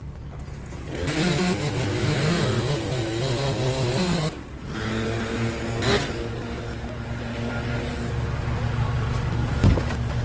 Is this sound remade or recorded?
recorded